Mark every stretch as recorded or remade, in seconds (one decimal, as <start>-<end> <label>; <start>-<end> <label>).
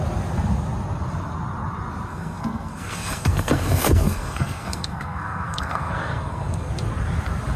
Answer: 0.0-2.1 recorded; 2.1-6.7 remade; 6.7-7.6 recorded